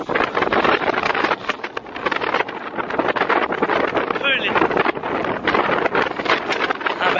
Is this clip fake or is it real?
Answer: real